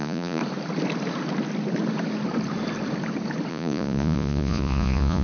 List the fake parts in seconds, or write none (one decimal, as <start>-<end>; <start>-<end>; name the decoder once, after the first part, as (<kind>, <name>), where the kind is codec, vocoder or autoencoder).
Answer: 0.0-0.4 (vocoder, Vocos); 3.5-5.2

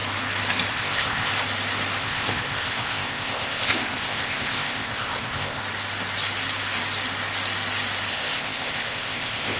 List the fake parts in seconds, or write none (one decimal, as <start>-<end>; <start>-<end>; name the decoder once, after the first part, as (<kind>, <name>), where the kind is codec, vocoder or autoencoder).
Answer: 0.7-1.3 (codec, ZipCodec); 2.0-5.6; 8.1-9.6

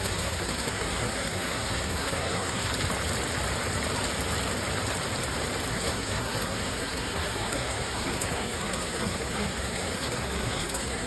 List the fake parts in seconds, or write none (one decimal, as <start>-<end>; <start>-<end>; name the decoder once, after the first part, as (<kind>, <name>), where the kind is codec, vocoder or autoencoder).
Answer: 0.0-2.7 (codec, SNAC); 5.7-11.1

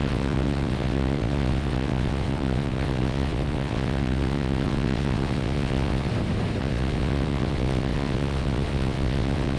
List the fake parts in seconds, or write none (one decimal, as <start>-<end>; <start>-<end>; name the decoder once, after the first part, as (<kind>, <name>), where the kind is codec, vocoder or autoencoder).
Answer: 0.0-6.1 (vocoder, WaveNeXt); 6.6-9.6

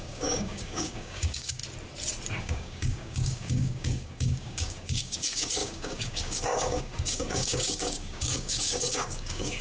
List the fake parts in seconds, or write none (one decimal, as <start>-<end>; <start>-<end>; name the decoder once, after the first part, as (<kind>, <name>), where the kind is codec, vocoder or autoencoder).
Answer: 0.0-1.6 (codec, DAC); 2.4-9.6

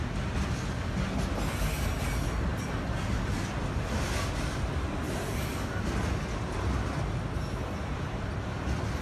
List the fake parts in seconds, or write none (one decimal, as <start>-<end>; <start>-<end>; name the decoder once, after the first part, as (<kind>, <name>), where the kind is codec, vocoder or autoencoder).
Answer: 7.6-8.2 (vocoder, BigVGAN v2)

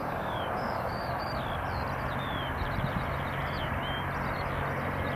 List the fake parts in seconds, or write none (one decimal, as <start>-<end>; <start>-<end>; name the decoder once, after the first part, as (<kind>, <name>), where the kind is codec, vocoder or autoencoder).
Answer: 0.0-1.2 (codec, DAC)